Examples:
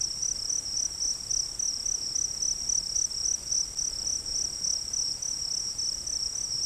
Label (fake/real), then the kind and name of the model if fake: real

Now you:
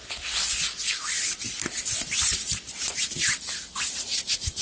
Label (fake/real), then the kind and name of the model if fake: real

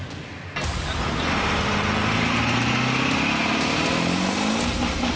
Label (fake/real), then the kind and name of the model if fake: real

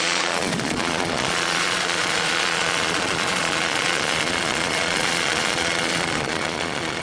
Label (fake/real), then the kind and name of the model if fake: fake, vocoder, Vocos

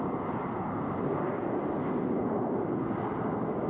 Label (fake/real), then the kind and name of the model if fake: real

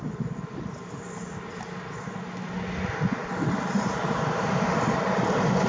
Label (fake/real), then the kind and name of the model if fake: real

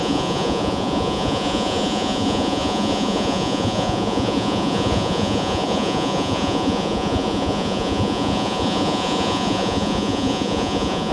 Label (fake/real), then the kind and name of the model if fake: fake, vocoder, Vocos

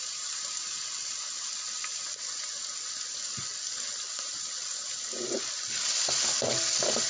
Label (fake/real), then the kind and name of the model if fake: real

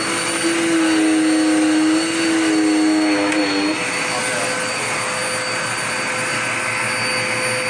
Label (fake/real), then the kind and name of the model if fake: real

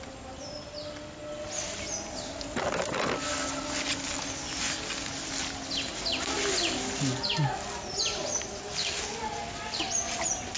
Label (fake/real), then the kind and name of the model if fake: real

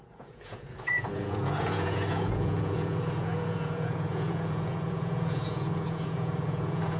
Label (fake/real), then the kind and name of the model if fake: fake, vocoder, Vocos